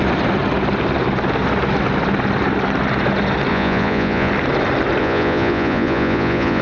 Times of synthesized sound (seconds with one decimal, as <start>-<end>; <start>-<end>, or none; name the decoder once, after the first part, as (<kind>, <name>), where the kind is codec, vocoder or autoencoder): 3.5-4.3 (vocoder, Vocos); 5.0-6.6